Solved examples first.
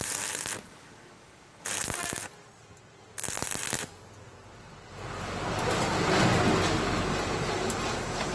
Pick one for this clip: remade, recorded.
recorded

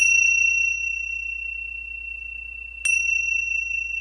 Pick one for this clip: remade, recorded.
recorded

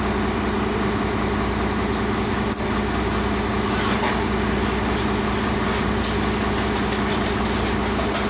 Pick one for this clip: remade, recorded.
recorded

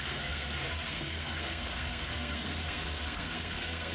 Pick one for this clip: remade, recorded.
remade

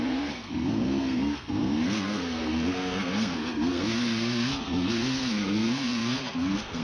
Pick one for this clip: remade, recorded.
remade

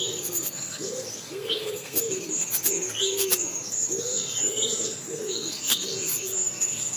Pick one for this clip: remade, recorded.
remade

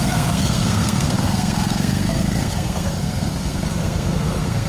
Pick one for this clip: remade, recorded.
remade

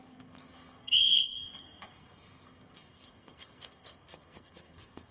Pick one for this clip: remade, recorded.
remade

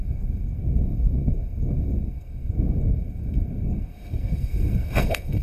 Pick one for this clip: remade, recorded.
remade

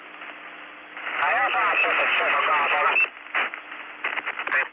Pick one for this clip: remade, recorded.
recorded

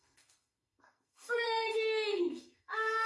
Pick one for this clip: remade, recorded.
remade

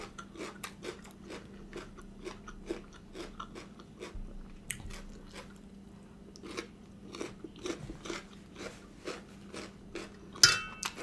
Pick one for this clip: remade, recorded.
recorded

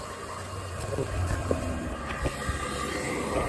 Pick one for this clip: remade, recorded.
recorded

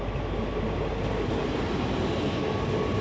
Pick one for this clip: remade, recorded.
recorded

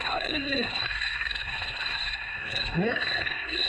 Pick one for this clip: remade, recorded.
remade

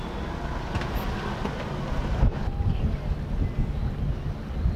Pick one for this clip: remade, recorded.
recorded